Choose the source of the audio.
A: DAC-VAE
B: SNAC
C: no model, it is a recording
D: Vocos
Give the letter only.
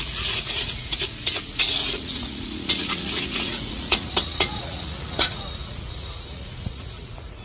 D